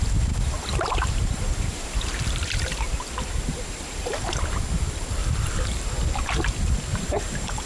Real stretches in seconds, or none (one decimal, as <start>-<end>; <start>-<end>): 0.0-0.7; 2.4-5.2; 5.9-6.9